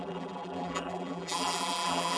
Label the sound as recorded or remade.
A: remade